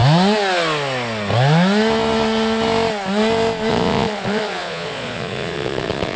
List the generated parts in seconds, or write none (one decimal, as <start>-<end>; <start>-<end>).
3.7-6.2